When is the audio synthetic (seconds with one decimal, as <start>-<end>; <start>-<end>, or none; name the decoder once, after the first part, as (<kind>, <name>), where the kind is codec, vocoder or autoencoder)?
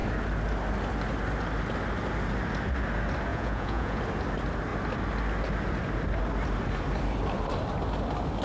3.3-4.0 (vocoder, Vocos)